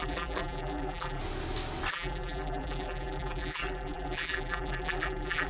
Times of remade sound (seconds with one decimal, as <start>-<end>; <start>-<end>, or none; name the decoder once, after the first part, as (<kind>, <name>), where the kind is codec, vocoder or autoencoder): 0.0-1.2 (vocoder, BigVGAN v2); 1.9-5.5

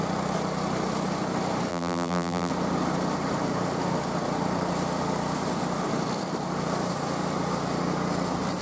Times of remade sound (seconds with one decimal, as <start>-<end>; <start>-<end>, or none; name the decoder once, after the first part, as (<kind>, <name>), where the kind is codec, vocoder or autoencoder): 1.7-2.5 (vocoder, BigVGAN v2)

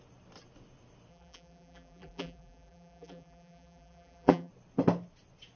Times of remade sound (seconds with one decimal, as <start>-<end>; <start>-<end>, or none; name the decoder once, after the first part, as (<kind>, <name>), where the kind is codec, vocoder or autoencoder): 1.1-4.5 (vocoder, BigVGAN v2)

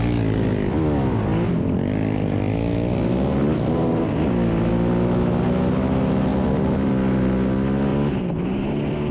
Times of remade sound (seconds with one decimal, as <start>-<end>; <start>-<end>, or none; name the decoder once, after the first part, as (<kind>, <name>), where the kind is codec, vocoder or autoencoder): 6.3-6.9 (vocoder, BigVGAN v2); 7.9-9.1